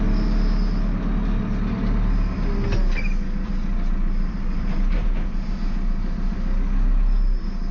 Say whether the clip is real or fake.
real